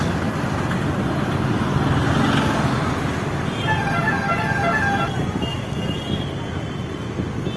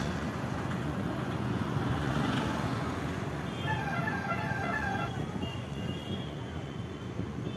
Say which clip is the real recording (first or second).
first